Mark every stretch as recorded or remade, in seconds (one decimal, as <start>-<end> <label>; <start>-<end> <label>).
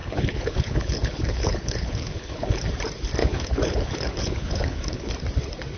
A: 0.0-2.6 remade; 2.6-3.2 recorded; 3.2-5.1 remade; 5.1-5.8 recorded